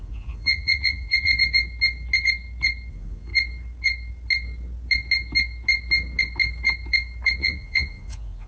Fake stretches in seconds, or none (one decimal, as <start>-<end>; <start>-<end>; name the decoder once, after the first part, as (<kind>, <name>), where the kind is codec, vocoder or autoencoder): 0.0-1.3 (vocoder, Vocos); 2.9-3.3; 7.4-8.5